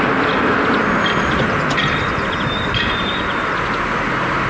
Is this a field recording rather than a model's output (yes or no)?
yes